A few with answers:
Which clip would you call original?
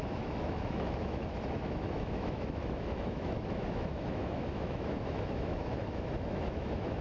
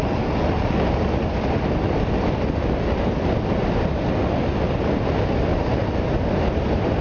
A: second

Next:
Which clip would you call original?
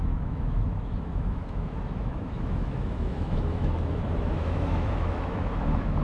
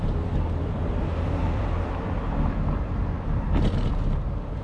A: second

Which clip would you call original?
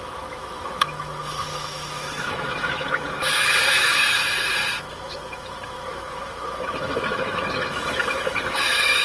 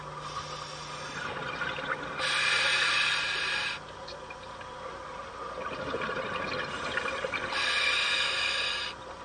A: second